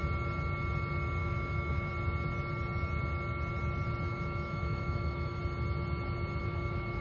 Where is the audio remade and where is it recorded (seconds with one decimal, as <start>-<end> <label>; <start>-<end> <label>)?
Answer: 0.0-1.2 recorded; 1.2-1.9 remade; 1.9-4.1 recorded; 4.1-5.4 remade; 5.4-6.4 recorded; 6.4-7.0 remade